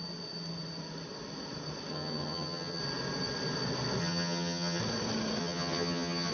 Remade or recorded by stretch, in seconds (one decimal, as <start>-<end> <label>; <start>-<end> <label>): 0.0-1.9 recorded; 1.9-2.8 remade; 2.8-4.0 recorded; 4.0-4.8 remade; 4.8-5.4 recorded; 5.4-6.3 remade